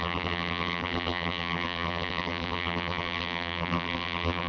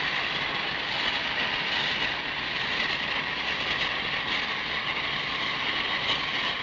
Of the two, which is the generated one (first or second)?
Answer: first